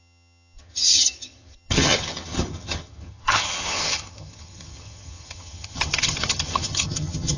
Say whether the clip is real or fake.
fake